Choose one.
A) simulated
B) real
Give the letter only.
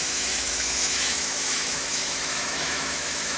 A